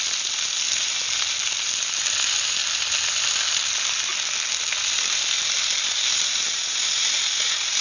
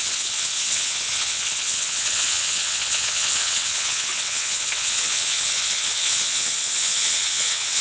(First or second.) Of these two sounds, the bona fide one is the first